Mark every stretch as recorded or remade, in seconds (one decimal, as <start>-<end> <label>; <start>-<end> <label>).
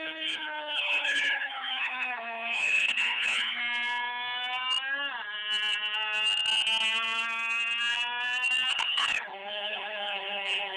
0.0-3.6 remade; 3.6-8.7 recorded; 8.7-10.8 remade